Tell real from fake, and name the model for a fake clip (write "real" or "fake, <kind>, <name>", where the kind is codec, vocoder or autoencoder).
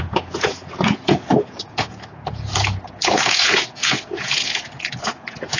fake, vocoder, Vocos